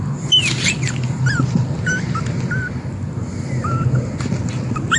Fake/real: real